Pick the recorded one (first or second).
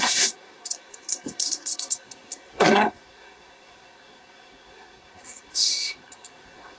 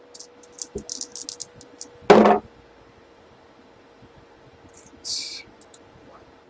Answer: second